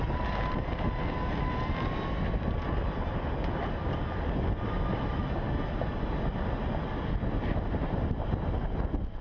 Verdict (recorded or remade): recorded